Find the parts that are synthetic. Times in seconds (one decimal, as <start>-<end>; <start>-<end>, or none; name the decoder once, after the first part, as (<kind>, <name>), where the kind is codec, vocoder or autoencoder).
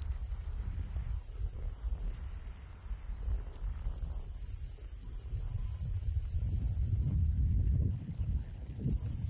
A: 7.2-8.9 (codec, HILCodec)